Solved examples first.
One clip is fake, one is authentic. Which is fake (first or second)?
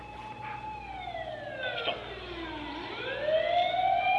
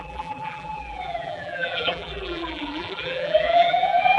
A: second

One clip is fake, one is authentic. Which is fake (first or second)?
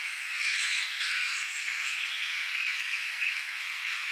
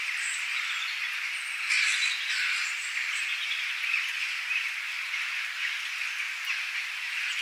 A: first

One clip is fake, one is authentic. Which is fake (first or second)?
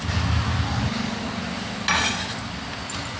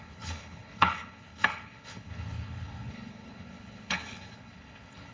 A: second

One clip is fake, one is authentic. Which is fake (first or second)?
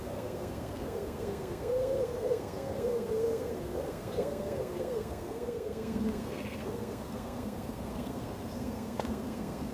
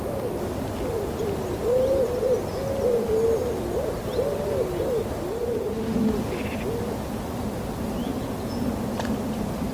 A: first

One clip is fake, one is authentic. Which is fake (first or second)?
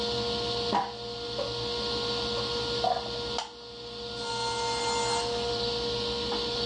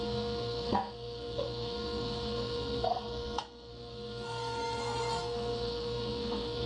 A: second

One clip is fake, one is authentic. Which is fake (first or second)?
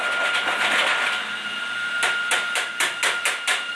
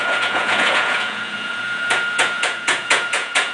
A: second